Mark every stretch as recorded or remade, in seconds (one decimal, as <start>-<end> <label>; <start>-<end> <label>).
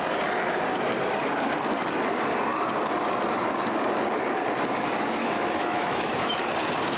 0.0-5.2 recorded; 5.2-6.4 remade; 6.4-7.0 recorded